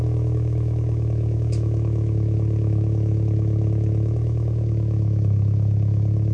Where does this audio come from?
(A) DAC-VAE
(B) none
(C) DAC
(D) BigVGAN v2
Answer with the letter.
A